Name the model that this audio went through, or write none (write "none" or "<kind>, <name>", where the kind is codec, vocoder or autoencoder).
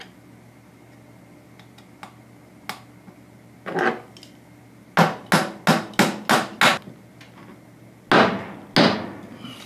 none